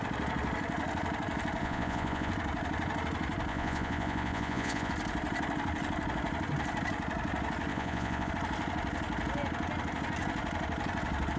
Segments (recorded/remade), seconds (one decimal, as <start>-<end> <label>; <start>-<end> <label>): 0.0-1.6 recorded; 1.6-2.3 remade; 2.3-3.5 recorded; 3.5-4.9 remade; 4.9-7.7 recorded; 7.7-8.3 remade; 8.3-11.4 recorded

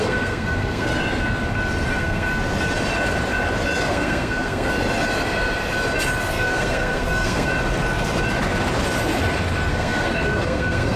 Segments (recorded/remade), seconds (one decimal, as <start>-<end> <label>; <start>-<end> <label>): 0.0-0.9 remade; 0.9-1.9 recorded; 1.9-2.3 remade; 2.3-3.8 recorded; 3.8-4.7 remade; 4.7-6.3 recorded; 6.3-7.5 remade; 7.5-9.7 recorded; 9.7-11.0 remade

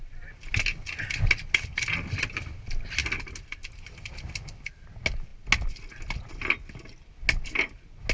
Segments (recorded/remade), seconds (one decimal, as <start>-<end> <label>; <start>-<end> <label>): 0.0-8.1 recorded

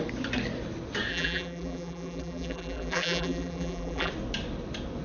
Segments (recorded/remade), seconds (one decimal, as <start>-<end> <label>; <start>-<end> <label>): 0.0-1.1 recorded; 1.1-4.1 remade; 4.1-5.0 recorded

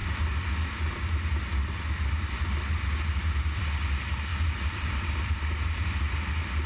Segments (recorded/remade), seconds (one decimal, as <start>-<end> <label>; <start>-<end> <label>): 0.0-4.3 recorded; 4.3-5.9 remade; 5.9-6.7 recorded